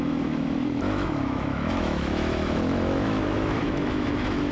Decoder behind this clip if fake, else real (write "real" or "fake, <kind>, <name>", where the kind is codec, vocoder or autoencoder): fake, autoencoder, DAC-VAE